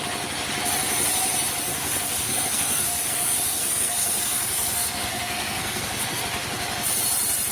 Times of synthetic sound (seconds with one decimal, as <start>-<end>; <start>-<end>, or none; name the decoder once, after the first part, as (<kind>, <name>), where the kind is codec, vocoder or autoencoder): 1.7-6.2 (codec, SNAC)